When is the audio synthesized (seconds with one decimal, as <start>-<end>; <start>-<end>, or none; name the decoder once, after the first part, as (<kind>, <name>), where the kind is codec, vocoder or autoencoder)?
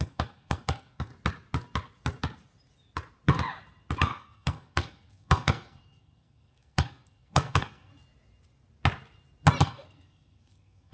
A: 0.0-1.1 (codec, SNAC); 4.0-7.9; 9.6-10.9